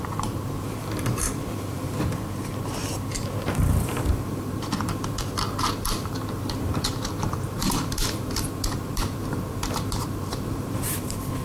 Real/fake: fake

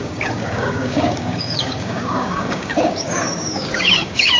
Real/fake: fake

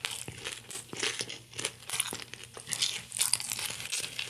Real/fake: real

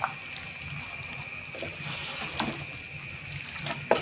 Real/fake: real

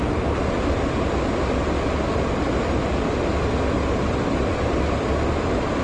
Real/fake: real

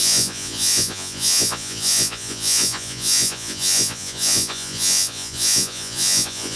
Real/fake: fake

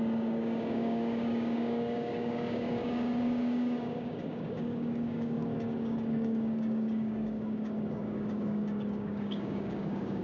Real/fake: fake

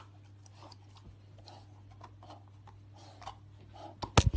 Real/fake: real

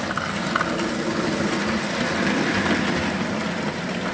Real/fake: real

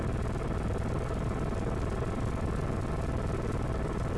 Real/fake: real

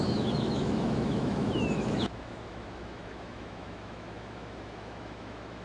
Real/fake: fake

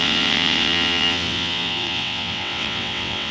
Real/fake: fake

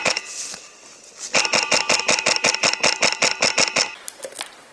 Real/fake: real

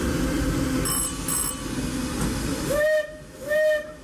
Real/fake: real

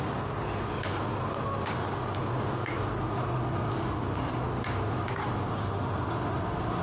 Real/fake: real